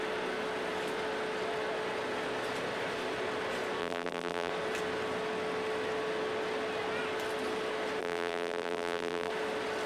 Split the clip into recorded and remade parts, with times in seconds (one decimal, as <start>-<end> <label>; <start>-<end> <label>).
0.0-3.8 recorded; 3.8-4.5 remade; 4.5-8.0 recorded; 8.0-9.3 remade; 9.3-9.9 recorded